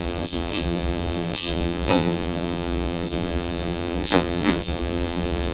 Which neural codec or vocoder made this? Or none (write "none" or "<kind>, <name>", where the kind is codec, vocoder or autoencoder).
vocoder, BigVGAN v2